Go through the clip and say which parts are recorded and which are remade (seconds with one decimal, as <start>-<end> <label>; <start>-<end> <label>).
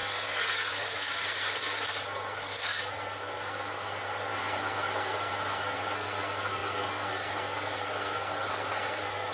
0.0-9.3 remade